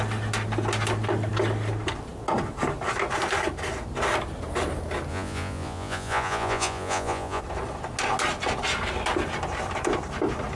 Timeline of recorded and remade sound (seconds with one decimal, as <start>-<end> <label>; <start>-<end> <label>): 0.0-5.1 recorded; 5.1-7.4 remade; 7.4-10.6 recorded